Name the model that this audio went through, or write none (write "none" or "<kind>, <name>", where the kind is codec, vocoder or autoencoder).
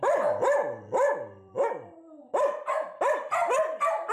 none